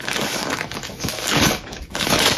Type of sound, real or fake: fake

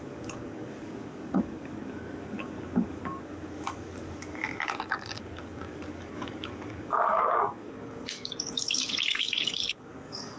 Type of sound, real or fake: fake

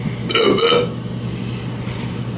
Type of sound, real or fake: real